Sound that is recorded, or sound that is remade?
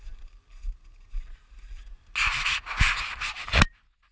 recorded